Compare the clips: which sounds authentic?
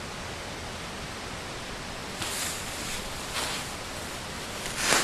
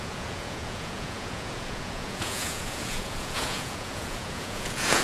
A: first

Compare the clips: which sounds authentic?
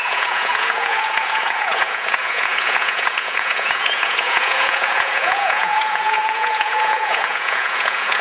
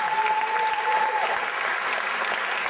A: second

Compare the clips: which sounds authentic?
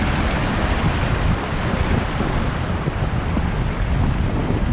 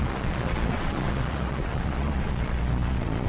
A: first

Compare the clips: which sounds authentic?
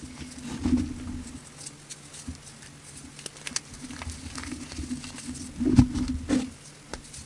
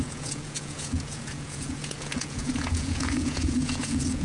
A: first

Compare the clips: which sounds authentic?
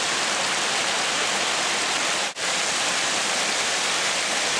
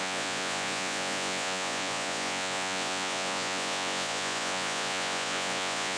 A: first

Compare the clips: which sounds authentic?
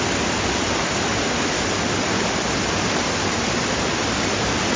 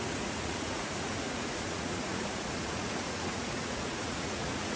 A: first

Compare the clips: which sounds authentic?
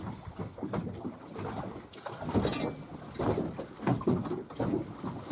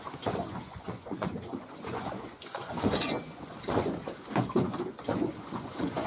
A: first